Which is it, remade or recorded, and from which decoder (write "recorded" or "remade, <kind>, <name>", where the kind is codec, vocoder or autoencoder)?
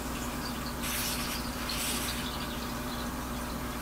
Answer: recorded